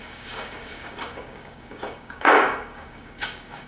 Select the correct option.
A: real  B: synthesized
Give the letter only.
B